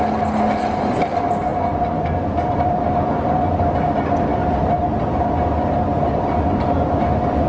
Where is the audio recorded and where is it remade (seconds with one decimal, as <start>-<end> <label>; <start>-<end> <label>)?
0.0-7.5 recorded